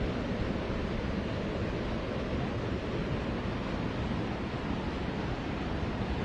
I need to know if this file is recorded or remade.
recorded